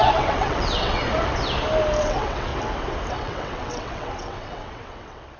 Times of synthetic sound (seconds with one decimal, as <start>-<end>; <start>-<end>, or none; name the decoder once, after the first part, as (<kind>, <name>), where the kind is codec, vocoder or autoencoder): 0.0-1.0 (vocoder, WaveNeXt); 2.0-2.5; 3.1-5.4